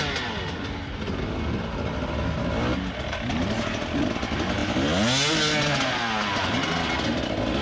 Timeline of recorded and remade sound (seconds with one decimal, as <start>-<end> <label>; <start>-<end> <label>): 0.0-7.6 recorded